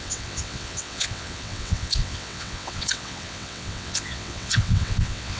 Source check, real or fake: fake